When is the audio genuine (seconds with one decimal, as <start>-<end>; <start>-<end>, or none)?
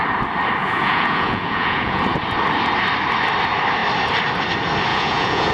0.0-0.6; 2.0-4.9